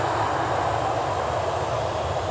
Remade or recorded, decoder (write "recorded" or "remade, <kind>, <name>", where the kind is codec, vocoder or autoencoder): recorded